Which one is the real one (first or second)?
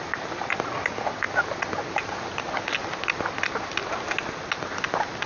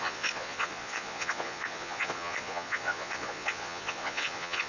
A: first